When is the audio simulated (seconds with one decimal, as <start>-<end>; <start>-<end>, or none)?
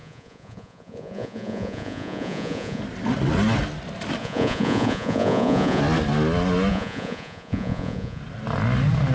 0.0-2.8; 4.2-5.8; 6.7-8.2